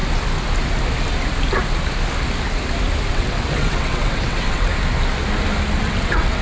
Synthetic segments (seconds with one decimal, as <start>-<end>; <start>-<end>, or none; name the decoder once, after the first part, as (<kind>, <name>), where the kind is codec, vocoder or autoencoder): 3.1-4.7 (vocoder, WaveNeXt); 5.8-6.4